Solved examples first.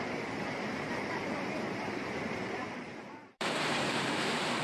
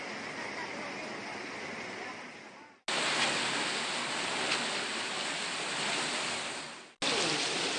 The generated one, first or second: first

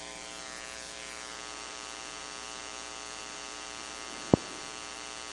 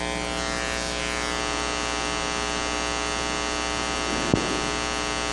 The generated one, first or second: first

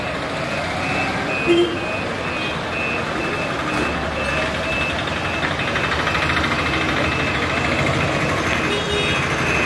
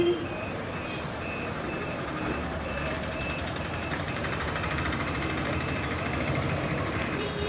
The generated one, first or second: second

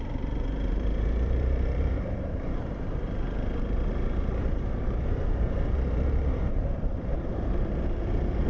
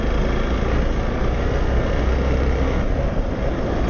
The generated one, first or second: first